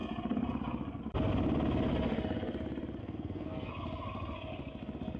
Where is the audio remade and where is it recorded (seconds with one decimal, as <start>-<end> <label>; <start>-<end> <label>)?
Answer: 0.0-3.0 recorded; 3.0-3.7 remade; 3.7-5.2 recorded